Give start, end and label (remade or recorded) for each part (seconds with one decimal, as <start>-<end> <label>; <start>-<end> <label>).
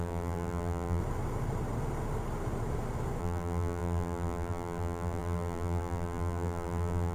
0.0-1.0 remade; 1.0-3.2 recorded; 3.2-7.1 remade